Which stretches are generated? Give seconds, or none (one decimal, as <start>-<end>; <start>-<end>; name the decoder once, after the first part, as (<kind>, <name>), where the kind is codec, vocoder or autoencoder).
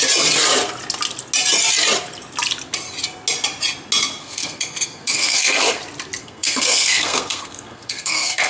4.2-5.8 (codec, SNAC); 6.2-8.5